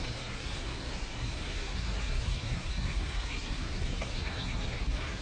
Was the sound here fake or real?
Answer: fake